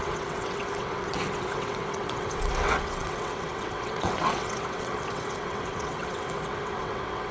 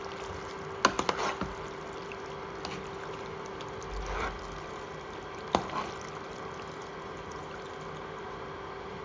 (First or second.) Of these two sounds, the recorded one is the second